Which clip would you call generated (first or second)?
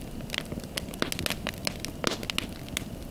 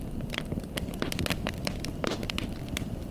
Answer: second